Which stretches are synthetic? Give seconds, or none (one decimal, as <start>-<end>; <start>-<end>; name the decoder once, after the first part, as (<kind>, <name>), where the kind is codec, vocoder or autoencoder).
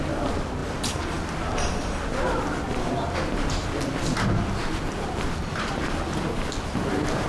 0.6-2.0 (vocoder, BigVGAN v2); 2.7-3.9; 5.4-6.8